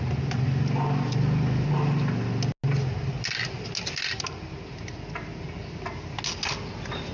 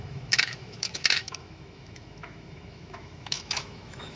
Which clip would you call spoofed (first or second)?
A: second